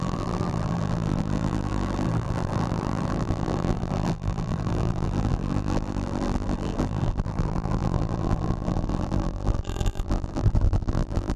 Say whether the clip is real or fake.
fake